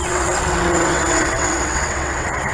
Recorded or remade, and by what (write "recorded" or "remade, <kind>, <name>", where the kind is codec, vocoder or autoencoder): remade, vocoder, WaveNeXt